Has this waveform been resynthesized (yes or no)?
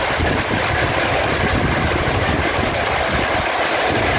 no